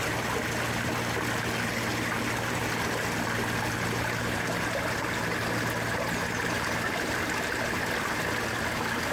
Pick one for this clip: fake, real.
real